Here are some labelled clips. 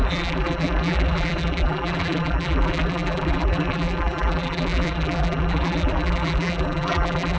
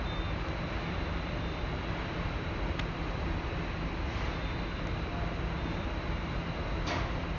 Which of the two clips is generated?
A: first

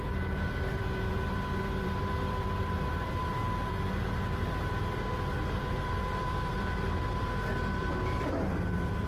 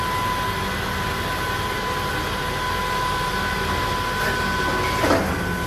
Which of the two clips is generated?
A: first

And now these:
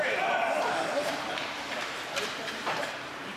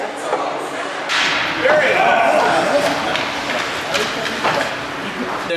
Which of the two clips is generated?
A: first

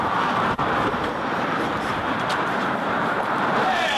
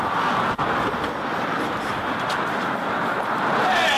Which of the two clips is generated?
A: first